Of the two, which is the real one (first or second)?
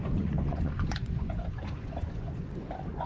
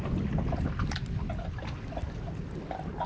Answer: second